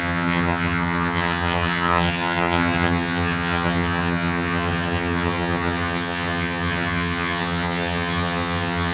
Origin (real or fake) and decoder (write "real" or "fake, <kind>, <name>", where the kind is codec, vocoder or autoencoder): fake, vocoder, HiFi-GAN